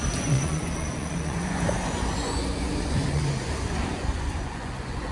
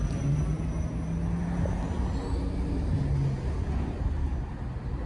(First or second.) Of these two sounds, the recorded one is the second